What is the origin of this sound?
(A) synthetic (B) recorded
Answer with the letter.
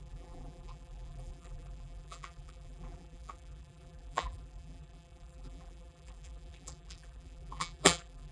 A